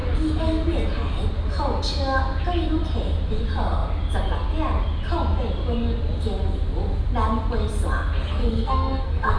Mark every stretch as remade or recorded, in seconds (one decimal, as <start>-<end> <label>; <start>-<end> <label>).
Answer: 0.0-8.4 recorded; 8.4-9.4 remade